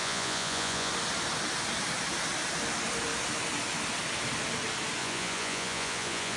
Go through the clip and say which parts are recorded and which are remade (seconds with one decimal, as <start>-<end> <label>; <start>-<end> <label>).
0.0-0.9 remade; 0.9-5.0 recorded; 5.0-6.4 remade